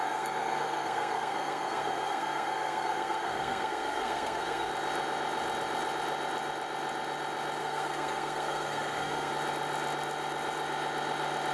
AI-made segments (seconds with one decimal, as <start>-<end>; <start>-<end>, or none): 0.0-4.7; 7.6-9.3